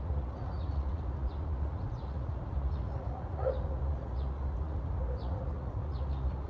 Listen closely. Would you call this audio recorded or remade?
remade